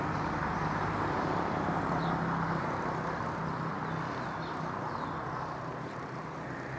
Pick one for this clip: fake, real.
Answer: real